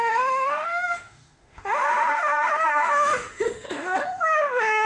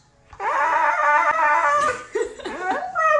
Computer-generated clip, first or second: first